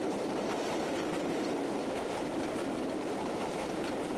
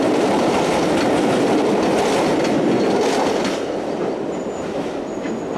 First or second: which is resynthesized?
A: first